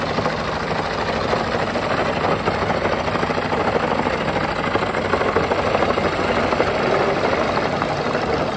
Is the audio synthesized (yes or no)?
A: no